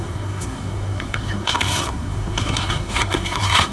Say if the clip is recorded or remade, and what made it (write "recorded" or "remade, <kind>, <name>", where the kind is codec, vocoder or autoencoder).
remade, codec, SNAC